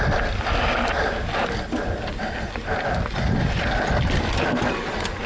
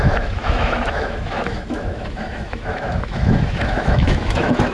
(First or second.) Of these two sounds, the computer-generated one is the second